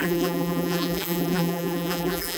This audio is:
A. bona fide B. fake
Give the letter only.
B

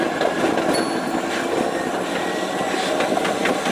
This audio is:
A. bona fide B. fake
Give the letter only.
A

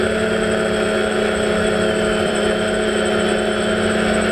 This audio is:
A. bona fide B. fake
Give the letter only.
B